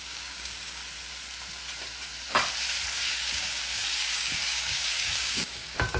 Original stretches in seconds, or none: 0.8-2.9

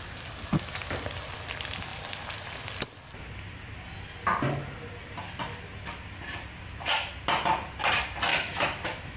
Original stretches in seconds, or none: 0.0-8.3

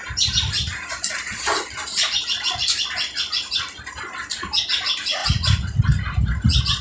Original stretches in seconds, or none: 4.0-5.2

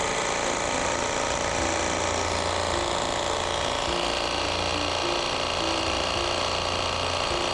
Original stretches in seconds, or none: 0.0-7.5